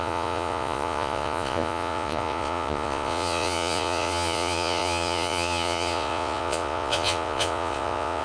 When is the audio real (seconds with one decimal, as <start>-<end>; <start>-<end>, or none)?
none